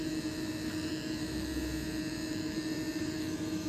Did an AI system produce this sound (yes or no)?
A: yes